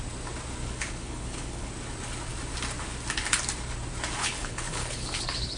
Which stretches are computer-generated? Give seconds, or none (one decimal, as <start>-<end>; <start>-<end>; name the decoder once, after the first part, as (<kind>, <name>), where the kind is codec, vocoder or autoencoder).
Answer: 0.6-1.7 (codec, HILCodec); 4.2-5.6

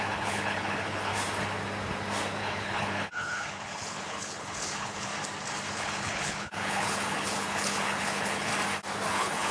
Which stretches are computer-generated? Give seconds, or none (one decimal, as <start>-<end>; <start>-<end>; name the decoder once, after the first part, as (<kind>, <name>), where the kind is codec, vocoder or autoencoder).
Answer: 0.0-1.1 (codec, HILCodec); 2.4-5.1; 5.7-8.5; 9.1-9.5

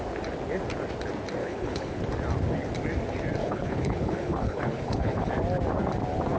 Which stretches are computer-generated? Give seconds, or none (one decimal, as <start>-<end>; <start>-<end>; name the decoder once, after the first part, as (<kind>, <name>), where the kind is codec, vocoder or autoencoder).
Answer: 1.4-2.0 (codec, HILCodec); 3.4-5.3

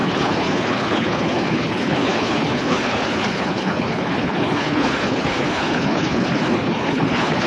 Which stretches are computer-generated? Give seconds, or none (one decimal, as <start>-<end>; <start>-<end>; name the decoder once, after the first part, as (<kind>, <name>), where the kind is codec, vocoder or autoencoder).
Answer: 0.0-7.5 (codec, HILCodec)